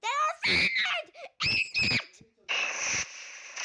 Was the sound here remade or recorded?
recorded